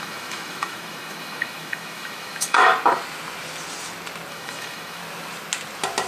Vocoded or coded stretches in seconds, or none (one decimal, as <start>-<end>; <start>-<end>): 0.0-2.7; 4.3-5.0